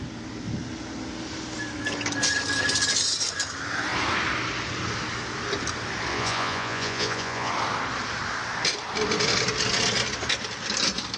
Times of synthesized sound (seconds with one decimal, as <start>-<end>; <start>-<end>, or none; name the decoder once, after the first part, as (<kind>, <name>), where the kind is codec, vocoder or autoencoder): 6.1-7.5 (vocoder, Vocos)

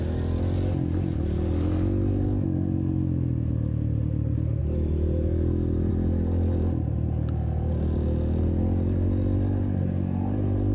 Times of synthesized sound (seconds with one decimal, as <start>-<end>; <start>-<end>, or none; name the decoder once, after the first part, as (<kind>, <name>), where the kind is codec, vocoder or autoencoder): none

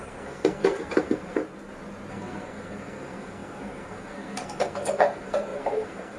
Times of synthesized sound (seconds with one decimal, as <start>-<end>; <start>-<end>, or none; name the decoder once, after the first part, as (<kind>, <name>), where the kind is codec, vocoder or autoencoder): 0.0-1.4 (codec, SNAC); 2.1-6.2

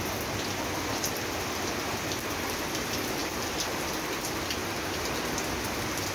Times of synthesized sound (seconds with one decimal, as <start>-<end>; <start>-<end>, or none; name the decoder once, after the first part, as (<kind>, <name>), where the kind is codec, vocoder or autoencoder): 3.2-3.9 (vocoder, BigVGAN v2); 4.6-5.1

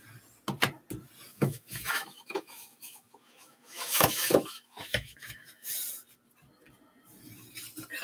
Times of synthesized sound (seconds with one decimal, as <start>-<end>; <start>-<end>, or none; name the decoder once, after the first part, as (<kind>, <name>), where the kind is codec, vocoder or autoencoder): 1.3-5.7 (autoencoder, DAC-VAE)

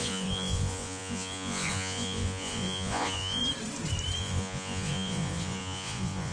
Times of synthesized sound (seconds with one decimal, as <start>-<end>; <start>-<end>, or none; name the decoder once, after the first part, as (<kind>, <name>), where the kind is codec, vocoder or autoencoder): 0.0-3.4 (vocoder, Vocos); 4.2-6.3

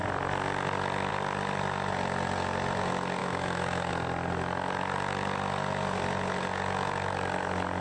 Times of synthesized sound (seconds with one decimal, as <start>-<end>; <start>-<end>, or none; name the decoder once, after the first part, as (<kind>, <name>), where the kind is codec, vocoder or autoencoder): 3.2-3.9 (autoencoder, DAC-VAE)

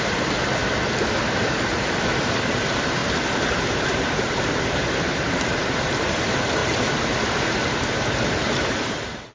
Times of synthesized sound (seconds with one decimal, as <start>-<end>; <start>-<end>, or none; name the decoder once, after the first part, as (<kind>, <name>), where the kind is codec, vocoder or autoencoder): 0.0-0.6 (vocoder, BigVGAN v2); 1.4-9.3